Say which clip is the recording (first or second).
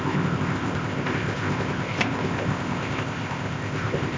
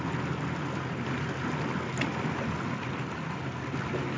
second